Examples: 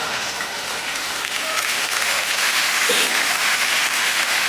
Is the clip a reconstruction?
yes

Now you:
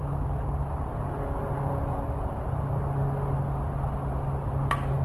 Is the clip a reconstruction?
no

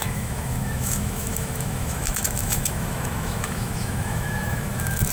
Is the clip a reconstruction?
yes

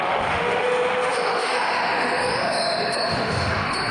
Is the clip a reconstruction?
yes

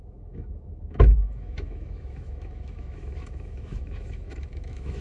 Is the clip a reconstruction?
yes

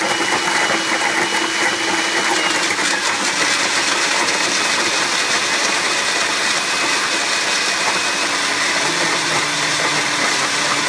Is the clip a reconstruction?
no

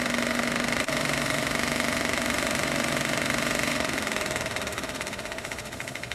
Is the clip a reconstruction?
yes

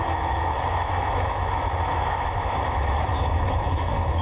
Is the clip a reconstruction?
yes